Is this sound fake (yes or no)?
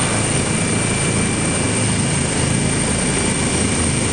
no